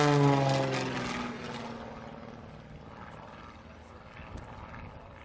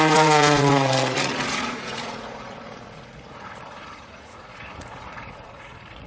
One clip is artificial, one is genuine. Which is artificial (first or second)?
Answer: second